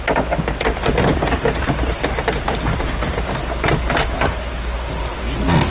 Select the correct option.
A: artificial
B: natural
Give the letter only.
B